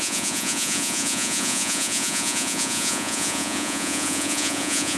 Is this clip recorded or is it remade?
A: remade